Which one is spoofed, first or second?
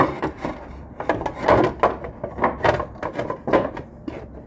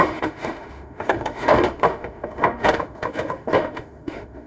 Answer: second